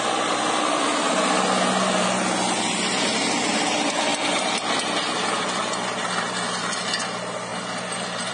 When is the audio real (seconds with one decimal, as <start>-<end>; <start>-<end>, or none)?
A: 0.0-8.3